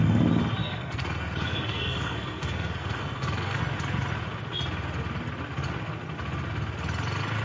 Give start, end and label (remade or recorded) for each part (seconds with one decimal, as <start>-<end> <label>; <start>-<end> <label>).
0.0-0.6 recorded; 0.6-3.6 remade; 3.6-7.4 recorded